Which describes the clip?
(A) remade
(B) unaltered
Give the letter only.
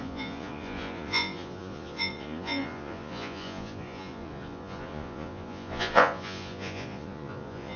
A